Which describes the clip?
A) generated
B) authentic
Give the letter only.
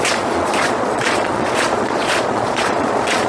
A